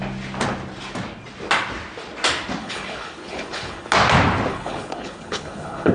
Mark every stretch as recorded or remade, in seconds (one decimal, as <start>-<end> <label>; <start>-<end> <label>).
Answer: 0.0-2.6 recorded; 2.6-3.9 remade; 3.9-4.5 recorded; 4.5-5.9 remade